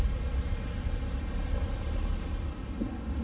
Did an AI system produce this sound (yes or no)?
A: no